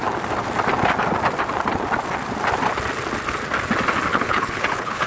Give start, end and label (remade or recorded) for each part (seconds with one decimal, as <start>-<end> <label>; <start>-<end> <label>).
0.0-4.1 recorded; 4.1-5.1 remade